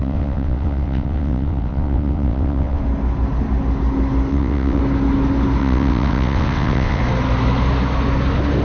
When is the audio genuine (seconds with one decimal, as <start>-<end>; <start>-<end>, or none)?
2.8-4.3; 4.8-5.6; 7.0-8.6